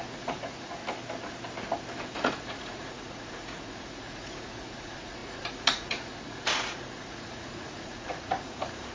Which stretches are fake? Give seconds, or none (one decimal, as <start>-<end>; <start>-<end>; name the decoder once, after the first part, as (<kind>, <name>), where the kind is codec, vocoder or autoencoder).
0.0-0.8 (vocoder, Vocos); 2.1-8.9